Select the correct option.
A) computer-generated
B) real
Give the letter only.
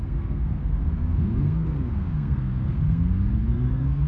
A